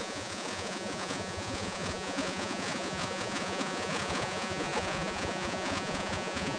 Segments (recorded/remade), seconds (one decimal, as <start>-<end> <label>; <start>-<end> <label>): 0.0-6.6 remade